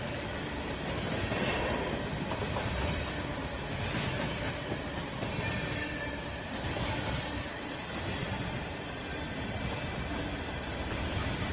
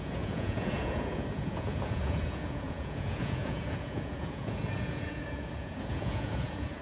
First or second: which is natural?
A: first